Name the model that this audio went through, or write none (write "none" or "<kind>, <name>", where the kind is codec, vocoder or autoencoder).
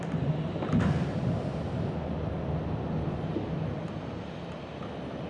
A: none